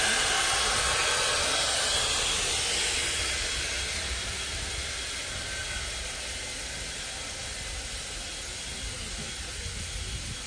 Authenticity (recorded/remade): recorded